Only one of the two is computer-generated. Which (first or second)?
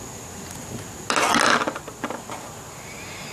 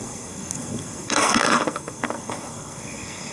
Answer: second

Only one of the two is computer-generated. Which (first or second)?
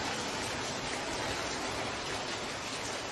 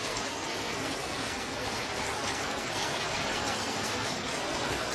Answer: second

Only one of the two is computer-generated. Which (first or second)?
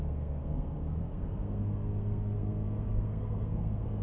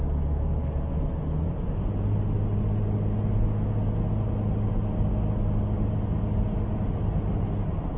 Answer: first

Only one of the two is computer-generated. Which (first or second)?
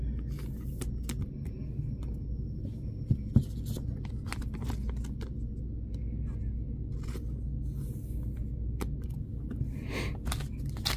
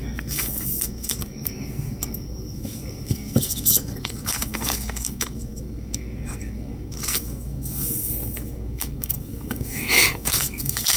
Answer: second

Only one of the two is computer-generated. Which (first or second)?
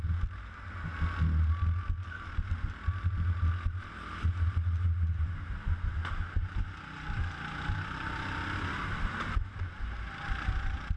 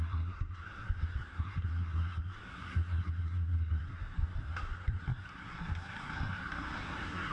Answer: second